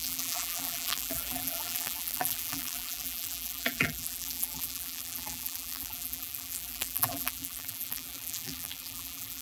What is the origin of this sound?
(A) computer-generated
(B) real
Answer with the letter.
A